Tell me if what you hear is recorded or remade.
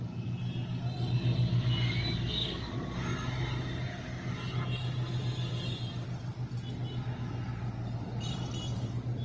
recorded